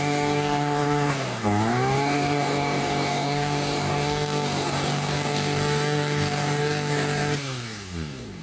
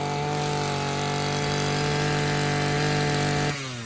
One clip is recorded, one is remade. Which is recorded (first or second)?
second